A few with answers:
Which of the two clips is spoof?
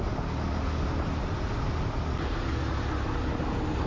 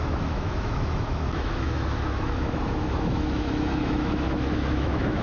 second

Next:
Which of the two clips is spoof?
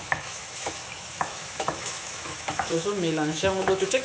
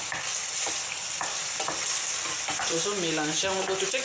first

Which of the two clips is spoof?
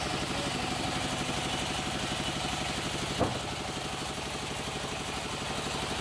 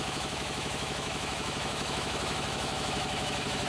second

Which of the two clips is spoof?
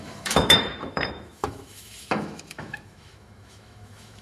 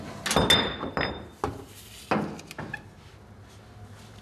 first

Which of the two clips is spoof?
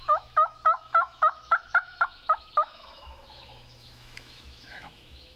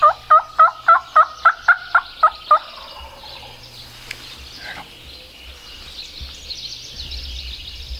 first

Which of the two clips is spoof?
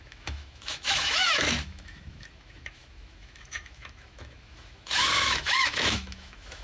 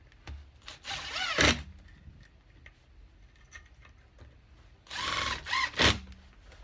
first